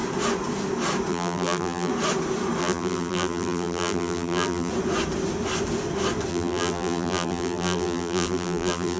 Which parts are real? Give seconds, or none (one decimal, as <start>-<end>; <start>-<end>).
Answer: 0.0-1.1; 1.9-2.6; 4.7-6.3